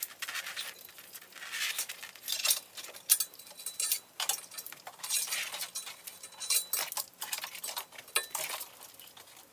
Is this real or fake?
real